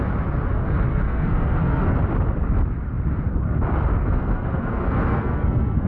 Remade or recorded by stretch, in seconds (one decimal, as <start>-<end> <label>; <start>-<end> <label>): 0.0-0.9 recorded; 0.9-2.0 remade; 2.0-4.0 recorded; 4.0-5.9 remade